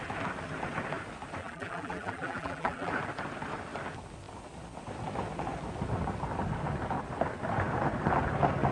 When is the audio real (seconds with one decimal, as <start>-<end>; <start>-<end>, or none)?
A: 0.0-1.4; 2.9-8.7